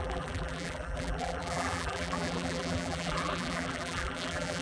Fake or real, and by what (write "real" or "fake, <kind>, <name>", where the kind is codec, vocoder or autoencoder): fake, vocoder, BigVGAN v2